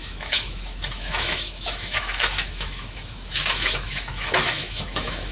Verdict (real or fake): fake